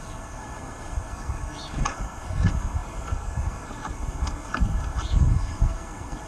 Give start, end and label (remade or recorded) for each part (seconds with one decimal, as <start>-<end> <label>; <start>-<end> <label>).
0.0-6.3 remade